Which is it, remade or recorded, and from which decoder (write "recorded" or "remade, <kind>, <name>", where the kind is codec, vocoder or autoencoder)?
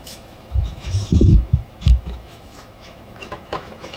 remade, autoencoder, DAC-VAE